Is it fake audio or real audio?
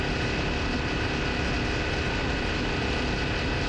real